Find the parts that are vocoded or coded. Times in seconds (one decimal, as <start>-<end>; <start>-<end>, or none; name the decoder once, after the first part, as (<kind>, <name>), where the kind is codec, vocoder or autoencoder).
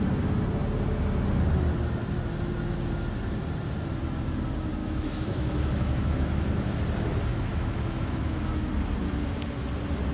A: 4.8-6.5 (autoencoder, DAC-VAE); 7.3-8.7